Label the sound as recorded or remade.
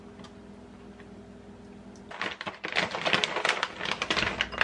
recorded